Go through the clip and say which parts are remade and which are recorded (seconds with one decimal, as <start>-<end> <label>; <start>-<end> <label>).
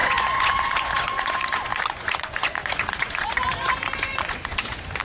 0.0-5.0 remade